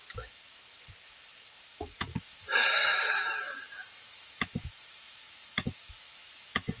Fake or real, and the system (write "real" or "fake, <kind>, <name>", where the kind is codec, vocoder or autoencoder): fake, autoencoder, DAC-VAE